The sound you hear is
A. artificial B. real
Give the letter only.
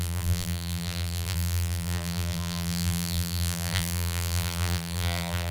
A